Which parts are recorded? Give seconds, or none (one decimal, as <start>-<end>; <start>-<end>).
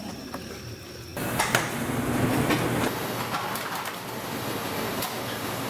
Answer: 0.0-5.7